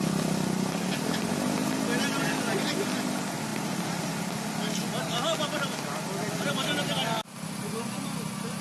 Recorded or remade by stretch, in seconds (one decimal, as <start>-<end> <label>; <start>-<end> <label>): 0.0-8.6 recorded

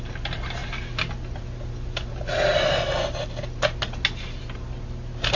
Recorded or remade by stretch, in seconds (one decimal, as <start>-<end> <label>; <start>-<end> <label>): 0.0-5.4 recorded

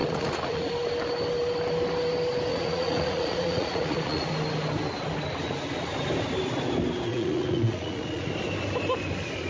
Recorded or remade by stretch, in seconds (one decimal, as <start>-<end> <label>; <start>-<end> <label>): 0.0-0.7 remade; 0.7-2.5 recorded; 2.5-4.3 remade; 4.3-7.1 recorded; 7.1-8.3 remade; 8.3-9.5 recorded